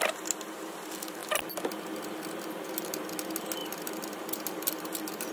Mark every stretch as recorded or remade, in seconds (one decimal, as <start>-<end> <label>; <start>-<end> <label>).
0.0-5.3 recorded